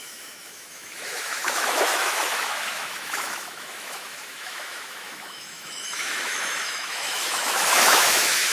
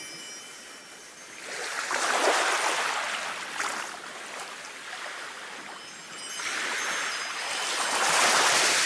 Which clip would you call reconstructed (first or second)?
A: first